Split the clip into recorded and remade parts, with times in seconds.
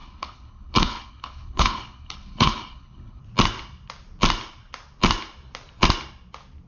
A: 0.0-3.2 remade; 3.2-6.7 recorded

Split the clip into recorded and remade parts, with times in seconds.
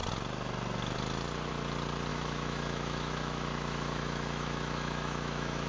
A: 0.0-2.1 recorded; 2.1-5.7 remade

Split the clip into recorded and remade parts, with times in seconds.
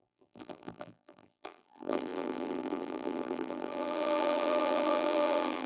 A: 0.0-5.7 remade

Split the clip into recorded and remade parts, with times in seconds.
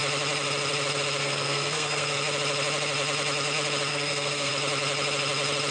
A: 0.0-1.2 recorded; 1.2-2.2 remade; 2.2-3.9 recorded; 3.9-4.5 remade; 4.5-5.7 recorded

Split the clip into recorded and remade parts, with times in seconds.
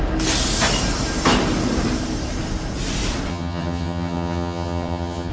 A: 0.0-3.3 recorded; 3.3-5.3 remade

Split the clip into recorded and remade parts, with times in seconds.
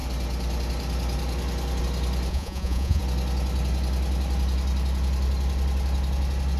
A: 0.0-2.3 recorded; 2.3-3.0 remade; 3.0-6.6 recorded